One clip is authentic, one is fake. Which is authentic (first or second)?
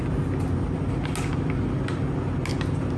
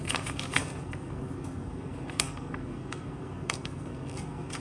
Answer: first